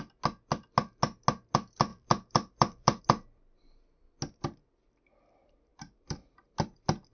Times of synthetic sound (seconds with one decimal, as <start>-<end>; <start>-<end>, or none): 1.9-3.0; 5.7-6.3